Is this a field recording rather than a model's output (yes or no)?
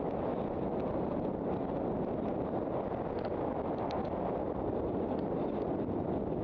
yes